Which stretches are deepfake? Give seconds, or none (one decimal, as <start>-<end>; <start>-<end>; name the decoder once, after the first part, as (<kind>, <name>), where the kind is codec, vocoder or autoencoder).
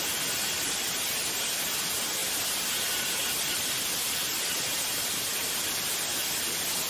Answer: none